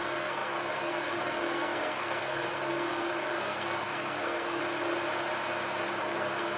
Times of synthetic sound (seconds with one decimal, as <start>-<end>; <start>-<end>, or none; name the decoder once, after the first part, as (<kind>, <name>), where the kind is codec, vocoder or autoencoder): 0.0-4.6 (codec, SNAC); 6.0-6.6